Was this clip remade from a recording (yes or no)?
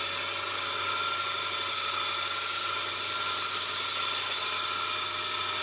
no